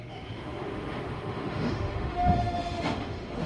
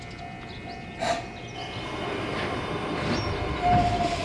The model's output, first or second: first